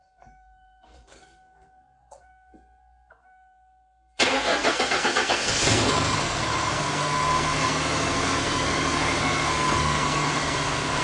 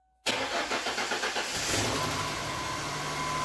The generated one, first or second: first